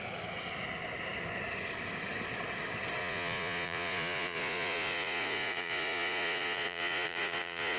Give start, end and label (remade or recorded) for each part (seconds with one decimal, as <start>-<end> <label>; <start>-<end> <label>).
0.0-3.0 recorded; 3.0-7.8 remade